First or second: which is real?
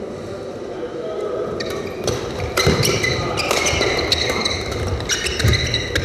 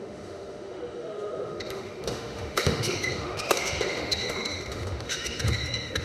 first